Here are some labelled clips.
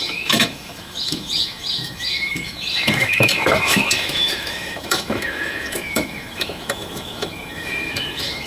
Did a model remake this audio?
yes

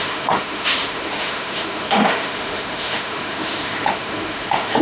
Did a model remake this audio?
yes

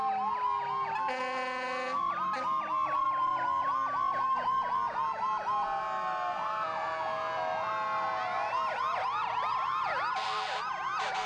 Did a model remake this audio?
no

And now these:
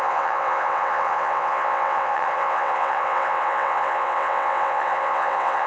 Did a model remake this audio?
yes